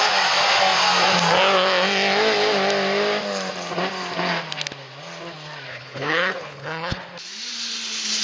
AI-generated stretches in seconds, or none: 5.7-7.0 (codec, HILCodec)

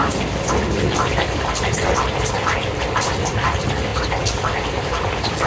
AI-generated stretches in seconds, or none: 0.0-3.3 (vocoder, BigVGAN v2); 3.9-5.5

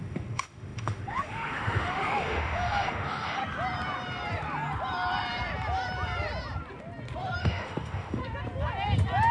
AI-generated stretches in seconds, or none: 0.0-3.4 (autoencoder, DAC-VAE); 7.4-8.2

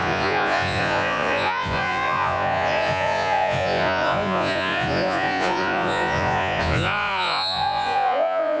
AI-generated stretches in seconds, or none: 0.0-8.6 (vocoder, Vocos)

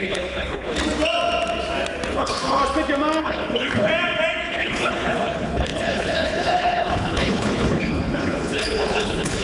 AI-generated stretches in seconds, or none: 0.0-0.8 (codec, HILCodec); 2.1-2.6; 3.2-3.9; 4.5-9.4

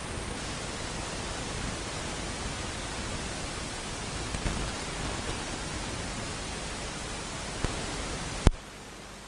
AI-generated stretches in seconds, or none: none

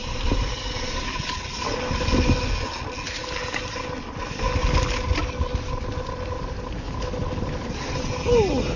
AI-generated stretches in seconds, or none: 0.0-2.0 (vocoder, BigVGAN v2)